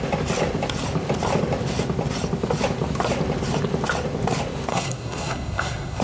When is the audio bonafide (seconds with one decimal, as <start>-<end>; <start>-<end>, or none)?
0.0-4.7